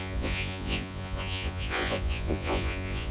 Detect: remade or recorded remade